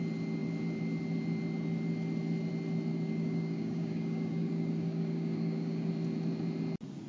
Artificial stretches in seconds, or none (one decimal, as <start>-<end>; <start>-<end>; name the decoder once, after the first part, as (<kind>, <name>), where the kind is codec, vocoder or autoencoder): 2.9-5.9 (codec, DAC)